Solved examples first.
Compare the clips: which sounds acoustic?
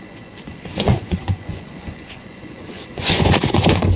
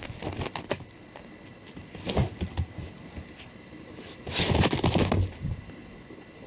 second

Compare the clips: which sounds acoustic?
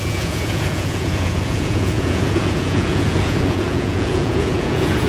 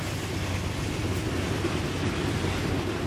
second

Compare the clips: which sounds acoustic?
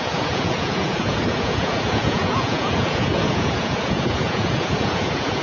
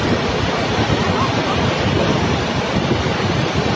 second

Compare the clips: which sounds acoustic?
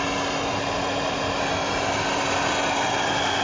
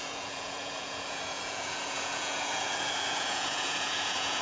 first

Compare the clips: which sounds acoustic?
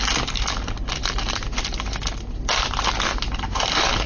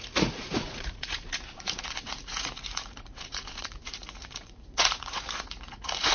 first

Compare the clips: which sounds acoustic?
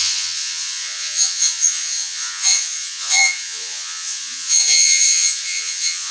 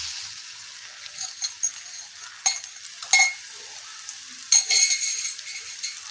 second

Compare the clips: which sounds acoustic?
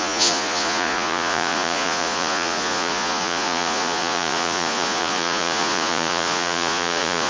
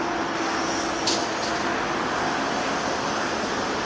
second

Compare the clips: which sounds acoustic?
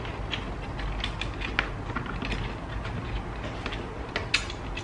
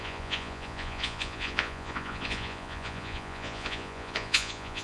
first